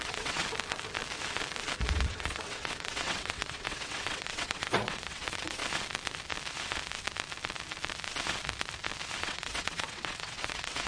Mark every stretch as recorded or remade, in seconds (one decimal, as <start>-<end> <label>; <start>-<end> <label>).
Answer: 0.0-0.4 remade; 0.4-1.9 recorded; 1.9-5.6 remade; 5.6-9.2 recorded; 9.2-10.9 remade